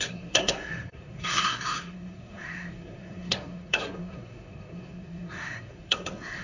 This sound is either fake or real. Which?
fake